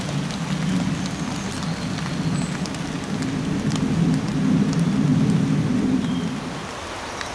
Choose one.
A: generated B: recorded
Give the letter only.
B